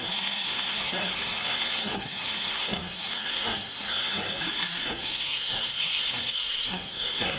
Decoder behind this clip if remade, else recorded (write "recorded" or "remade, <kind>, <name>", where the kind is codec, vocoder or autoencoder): remade, codec, SNAC